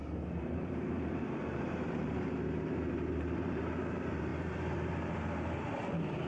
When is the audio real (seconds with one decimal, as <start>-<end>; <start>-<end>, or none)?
none